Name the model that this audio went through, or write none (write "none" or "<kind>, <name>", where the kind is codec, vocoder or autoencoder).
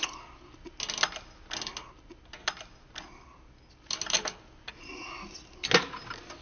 none